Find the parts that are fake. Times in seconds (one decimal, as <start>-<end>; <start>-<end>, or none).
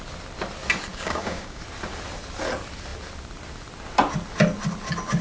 0.9-1.6